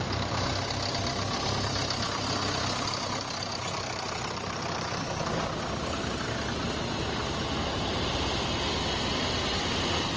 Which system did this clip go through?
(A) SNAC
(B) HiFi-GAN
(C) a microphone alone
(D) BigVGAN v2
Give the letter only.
C